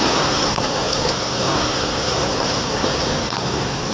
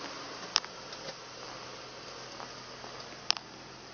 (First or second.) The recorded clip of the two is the second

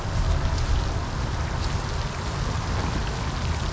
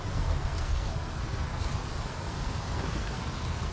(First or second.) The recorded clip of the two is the first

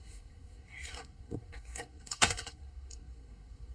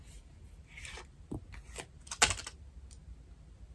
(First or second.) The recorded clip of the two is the second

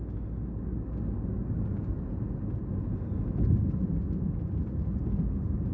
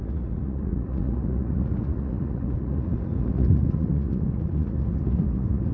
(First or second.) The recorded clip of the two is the first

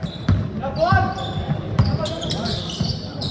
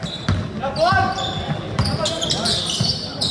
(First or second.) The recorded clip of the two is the second